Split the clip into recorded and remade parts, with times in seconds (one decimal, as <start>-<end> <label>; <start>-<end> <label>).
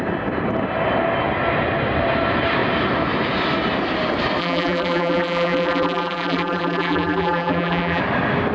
0.0-4.4 recorded; 4.4-8.0 remade; 8.0-8.5 recorded